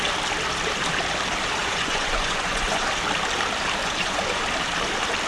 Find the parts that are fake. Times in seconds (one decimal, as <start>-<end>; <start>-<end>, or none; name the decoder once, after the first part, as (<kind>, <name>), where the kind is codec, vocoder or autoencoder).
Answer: 1.6-2.9 (vocoder, Vocos); 3.8-4.4